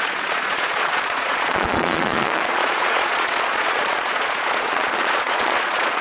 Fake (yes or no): yes